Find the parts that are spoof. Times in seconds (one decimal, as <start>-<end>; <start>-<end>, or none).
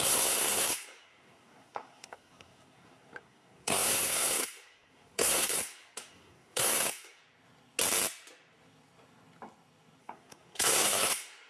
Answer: 0.0-7.2; 10.0-11.5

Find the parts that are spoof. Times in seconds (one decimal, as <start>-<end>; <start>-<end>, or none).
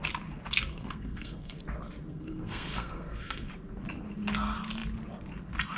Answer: 0.7-1.6; 2.1-3.5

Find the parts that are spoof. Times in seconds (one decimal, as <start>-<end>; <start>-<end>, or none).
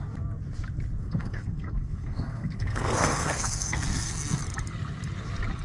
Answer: 1.0-4.4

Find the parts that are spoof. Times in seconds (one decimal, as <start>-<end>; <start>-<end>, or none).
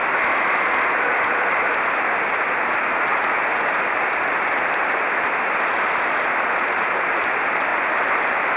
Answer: none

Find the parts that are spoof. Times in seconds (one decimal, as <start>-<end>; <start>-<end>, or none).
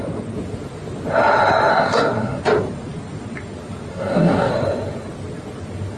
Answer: 1.7-2.4; 3.9-4.5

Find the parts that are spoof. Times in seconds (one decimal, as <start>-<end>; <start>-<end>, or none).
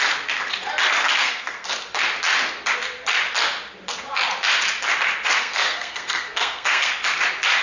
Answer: 1.2-1.7; 5.4-6.9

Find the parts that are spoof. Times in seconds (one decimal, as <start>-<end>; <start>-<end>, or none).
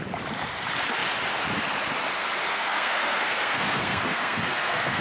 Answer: 2.5-5.0